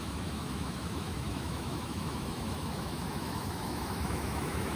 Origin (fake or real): fake